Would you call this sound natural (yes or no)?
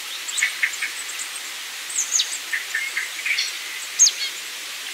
yes